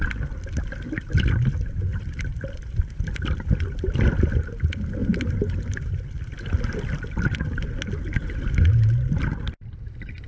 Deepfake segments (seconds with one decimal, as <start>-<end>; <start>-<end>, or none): 1.9-4.1